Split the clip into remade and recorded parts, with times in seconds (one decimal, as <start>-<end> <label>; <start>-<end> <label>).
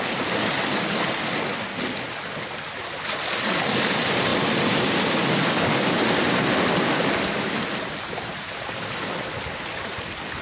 0.0-4.3 recorded; 4.3-5.9 remade; 5.9-10.4 recorded